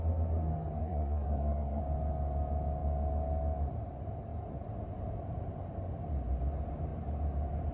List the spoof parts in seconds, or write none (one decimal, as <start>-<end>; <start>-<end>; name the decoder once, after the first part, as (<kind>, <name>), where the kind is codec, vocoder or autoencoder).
0.8-1.8 (codec, SNAC)

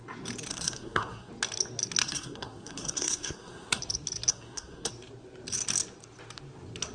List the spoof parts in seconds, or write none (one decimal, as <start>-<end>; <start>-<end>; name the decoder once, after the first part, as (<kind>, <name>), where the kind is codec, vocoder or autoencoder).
0.5-1.3 (codec, SNAC); 2.0-3.8; 4.3-4.9

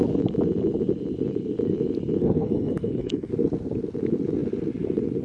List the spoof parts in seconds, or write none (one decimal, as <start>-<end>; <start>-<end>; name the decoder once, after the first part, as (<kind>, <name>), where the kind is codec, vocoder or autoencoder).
2.2-3.3 (codec, SNAC)

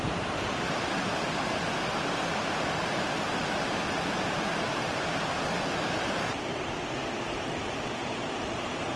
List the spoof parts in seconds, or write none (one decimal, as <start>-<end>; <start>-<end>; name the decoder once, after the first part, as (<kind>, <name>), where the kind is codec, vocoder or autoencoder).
none